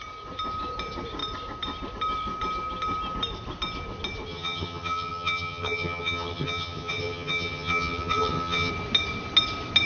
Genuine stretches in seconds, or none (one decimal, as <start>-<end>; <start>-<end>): 0.0-4.3; 8.7-9.9